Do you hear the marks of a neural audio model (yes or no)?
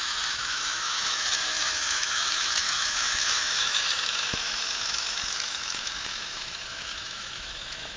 yes